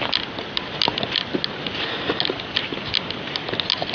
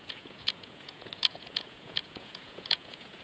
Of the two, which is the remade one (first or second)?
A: second